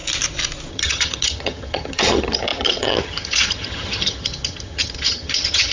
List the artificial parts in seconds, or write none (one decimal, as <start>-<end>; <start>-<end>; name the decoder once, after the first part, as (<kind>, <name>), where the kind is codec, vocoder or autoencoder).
0.7-5.7 (vocoder, HiFi-GAN)